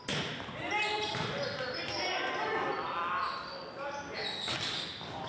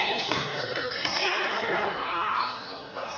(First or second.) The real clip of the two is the first